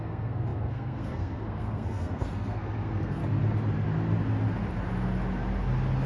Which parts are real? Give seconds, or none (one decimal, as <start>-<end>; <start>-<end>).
3.2-6.1